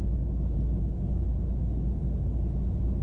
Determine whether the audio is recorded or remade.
recorded